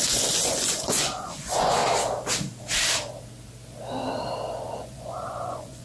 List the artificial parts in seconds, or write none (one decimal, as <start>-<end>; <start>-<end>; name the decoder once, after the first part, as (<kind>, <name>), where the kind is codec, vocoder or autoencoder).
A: 0.0-1.8 (vocoder, Vocos); 4.7-5.8

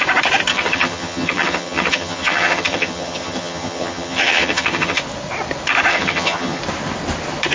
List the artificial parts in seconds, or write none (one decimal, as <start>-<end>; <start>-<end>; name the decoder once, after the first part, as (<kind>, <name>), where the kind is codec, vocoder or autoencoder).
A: 0.5-5.0 (vocoder, HiFi-GAN); 5.9-6.6

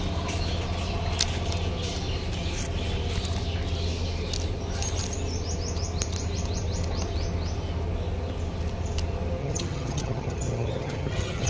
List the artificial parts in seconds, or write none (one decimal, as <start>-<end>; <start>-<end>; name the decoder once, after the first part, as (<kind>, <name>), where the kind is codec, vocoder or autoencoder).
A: 9.4-11.5 (vocoder, HiFi-GAN)

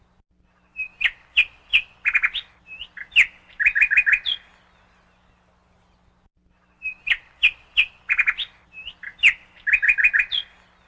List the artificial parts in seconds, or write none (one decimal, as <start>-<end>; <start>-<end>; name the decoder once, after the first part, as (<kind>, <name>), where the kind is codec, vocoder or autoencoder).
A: none

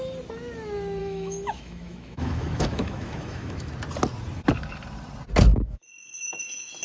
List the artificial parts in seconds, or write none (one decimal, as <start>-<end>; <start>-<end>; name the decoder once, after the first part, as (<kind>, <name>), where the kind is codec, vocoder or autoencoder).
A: 1.0-3.7 (autoencoder, DAC-VAE); 5.5-6.8

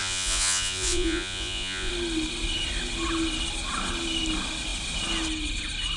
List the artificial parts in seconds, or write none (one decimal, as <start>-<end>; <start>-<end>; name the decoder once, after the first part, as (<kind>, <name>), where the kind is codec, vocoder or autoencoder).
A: 0.0-1.9 (vocoder, Vocos)